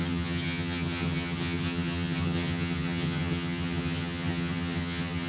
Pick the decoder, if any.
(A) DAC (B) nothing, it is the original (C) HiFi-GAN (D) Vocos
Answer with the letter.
C